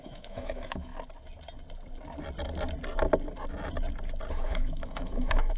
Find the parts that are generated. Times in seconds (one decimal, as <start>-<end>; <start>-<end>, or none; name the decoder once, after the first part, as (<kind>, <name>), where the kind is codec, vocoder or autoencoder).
0.0-0.9 (autoencoder, DAC-VAE); 4.3-5.6